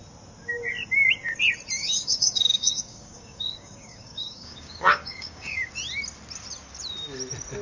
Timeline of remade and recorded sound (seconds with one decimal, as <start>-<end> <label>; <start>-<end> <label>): 0.0-1.8 recorded; 1.8-5.7 remade; 5.7-7.6 recorded